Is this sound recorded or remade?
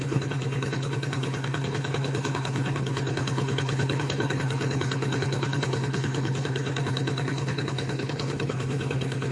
remade